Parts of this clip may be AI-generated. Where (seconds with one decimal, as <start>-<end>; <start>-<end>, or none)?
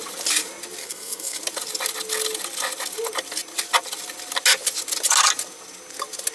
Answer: 0.8-1.4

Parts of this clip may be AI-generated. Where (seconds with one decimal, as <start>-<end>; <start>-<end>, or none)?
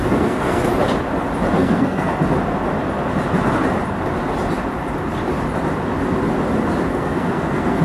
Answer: 0.0-0.7; 1.6-2.1; 6.9-7.8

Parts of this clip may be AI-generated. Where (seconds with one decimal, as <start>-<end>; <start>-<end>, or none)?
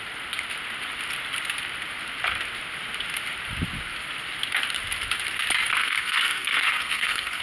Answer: 5.8-7.4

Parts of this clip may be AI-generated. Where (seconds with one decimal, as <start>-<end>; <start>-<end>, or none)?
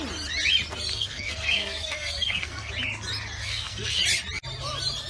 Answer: 0.9-2.7; 3.4-4.0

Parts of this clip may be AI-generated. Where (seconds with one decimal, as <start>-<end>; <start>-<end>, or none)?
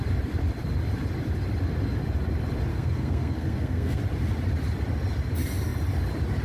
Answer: 2.7-4.0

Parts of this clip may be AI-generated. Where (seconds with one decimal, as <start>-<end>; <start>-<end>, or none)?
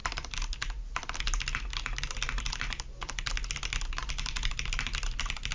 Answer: none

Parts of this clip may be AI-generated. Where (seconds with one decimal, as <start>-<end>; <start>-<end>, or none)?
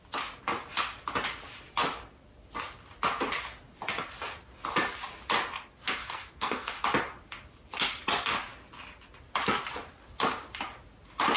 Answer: 6.0-6.7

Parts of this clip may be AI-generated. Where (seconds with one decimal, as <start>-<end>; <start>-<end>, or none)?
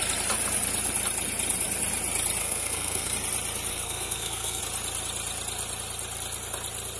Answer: 2.4-3.1; 3.7-4.6